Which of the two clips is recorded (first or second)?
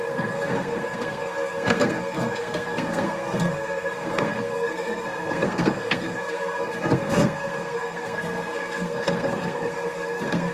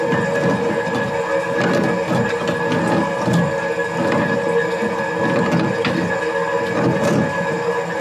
second